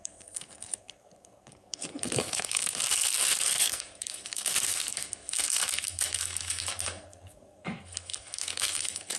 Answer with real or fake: fake